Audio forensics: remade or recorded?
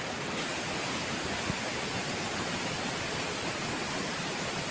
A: recorded